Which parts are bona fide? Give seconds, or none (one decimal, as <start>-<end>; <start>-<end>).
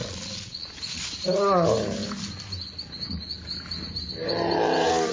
1.0-5.1